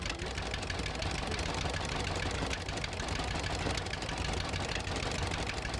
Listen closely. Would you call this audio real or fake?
real